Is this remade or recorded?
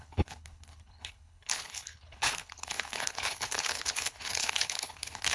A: remade